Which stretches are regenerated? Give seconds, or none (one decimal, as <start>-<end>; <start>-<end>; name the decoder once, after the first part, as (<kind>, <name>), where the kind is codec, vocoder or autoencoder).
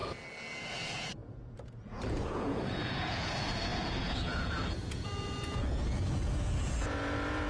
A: 0.7-7.5 (vocoder, Vocos)